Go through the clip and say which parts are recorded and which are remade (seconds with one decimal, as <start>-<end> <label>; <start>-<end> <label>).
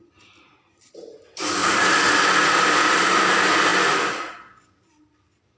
0.0-5.6 remade